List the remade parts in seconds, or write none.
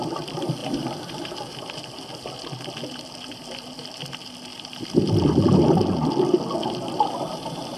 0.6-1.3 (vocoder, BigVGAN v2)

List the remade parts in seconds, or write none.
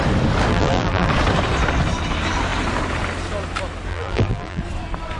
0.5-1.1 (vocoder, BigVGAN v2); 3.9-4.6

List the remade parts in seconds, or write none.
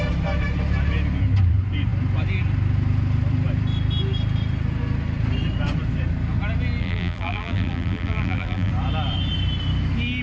6.8-8.7 (vocoder, BigVGAN v2)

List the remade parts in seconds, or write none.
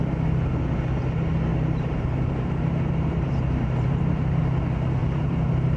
1.5-4.4 (vocoder, BigVGAN v2); 5.0-5.8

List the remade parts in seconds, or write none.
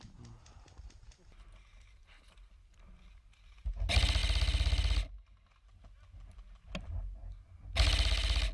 1.7-3.7 (vocoder, BigVGAN v2)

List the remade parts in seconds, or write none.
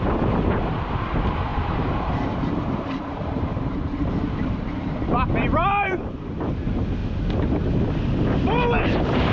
0.0-7.0 (vocoder, BigVGAN v2); 8.8-9.3